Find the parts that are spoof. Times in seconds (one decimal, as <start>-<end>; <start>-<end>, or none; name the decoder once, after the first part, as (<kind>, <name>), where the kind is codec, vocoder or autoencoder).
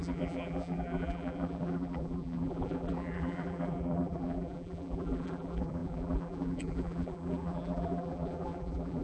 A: 0.0-9.0 (vocoder, BigVGAN v2)